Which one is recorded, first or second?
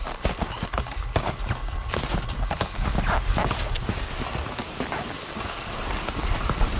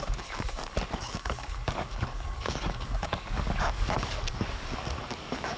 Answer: first